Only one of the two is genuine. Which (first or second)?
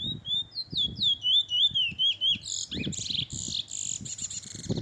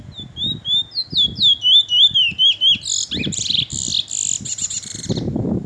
second